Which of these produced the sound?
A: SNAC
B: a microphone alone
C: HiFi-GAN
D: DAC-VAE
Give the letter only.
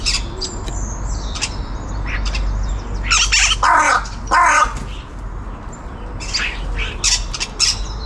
B